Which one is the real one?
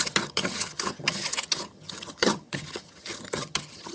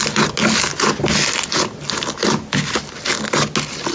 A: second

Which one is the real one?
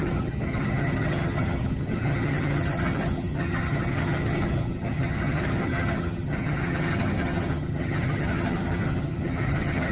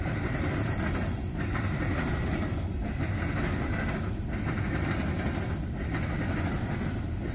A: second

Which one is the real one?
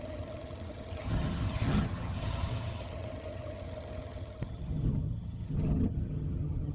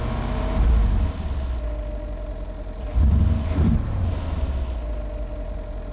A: second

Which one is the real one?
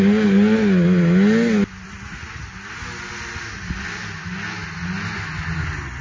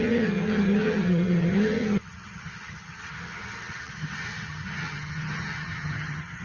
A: first